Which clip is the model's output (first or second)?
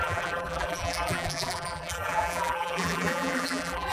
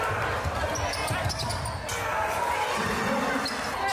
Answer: first